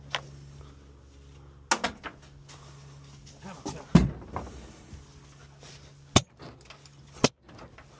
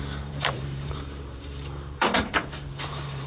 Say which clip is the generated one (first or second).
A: second